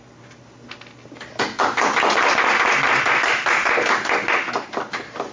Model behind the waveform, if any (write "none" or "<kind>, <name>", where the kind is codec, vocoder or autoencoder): none